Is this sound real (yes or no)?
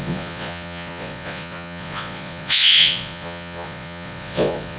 no